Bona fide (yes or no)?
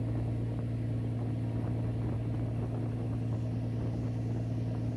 yes